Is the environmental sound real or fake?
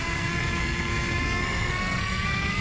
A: fake